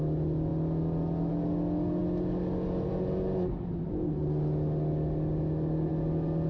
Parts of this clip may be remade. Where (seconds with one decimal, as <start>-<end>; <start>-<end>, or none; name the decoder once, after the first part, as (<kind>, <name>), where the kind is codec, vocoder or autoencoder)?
none